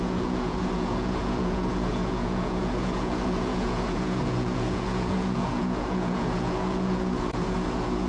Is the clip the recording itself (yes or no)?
no